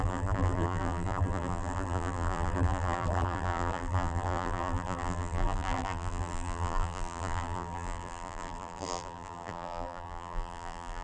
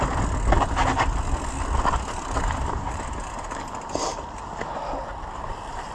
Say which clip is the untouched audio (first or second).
second